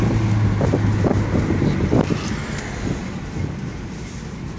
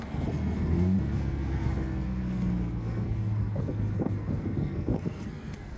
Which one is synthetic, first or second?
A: second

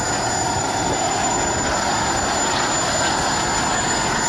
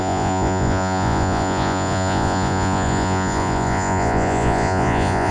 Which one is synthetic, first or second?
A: second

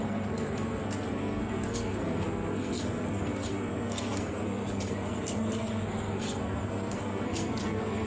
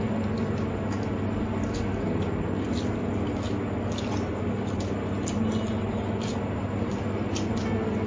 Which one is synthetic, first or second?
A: first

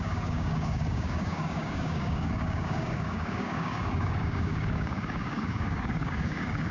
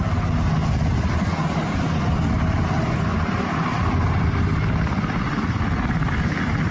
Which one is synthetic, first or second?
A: first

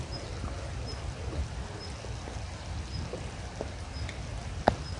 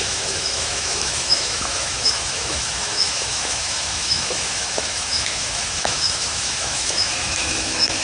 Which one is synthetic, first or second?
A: second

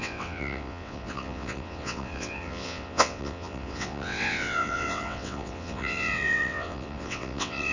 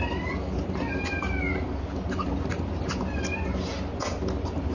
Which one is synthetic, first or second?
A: first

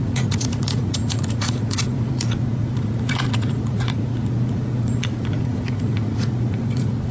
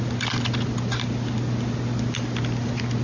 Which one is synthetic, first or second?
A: first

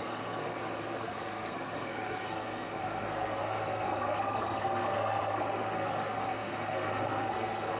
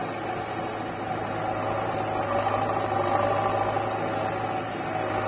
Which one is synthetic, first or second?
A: first